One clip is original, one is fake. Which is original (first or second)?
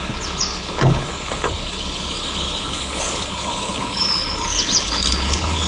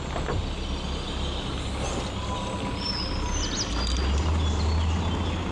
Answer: second